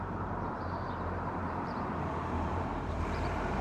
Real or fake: fake